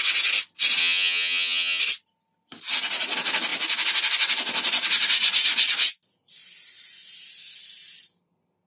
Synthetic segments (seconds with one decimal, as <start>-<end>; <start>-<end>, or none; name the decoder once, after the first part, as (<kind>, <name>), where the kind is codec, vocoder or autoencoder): 0.8-1.8 (vocoder, HiFi-GAN)